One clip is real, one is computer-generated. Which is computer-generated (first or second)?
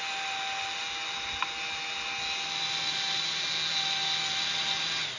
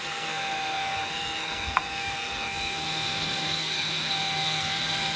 second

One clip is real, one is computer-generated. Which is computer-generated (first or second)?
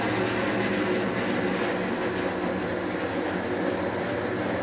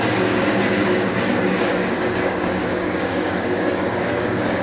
second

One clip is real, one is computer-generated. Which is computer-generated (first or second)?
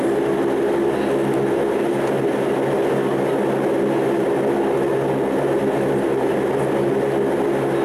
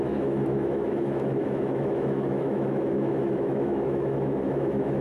second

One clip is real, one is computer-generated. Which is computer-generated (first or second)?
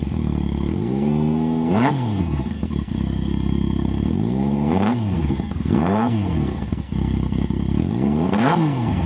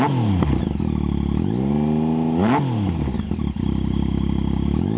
first